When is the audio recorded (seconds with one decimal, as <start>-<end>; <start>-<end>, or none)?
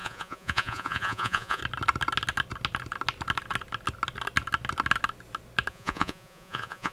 1.6-5.7